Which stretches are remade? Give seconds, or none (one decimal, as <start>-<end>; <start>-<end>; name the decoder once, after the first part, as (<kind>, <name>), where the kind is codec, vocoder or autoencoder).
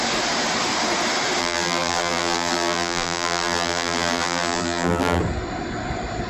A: 1.4-5.2 (vocoder, BigVGAN v2)